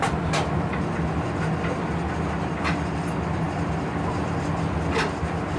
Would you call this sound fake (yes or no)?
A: no